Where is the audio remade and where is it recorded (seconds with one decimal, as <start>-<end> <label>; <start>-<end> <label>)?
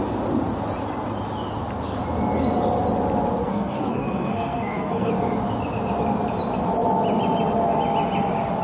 0.0-3.4 recorded; 3.4-5.1 remade; 5.1-8.6 recorded